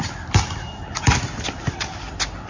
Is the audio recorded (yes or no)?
yes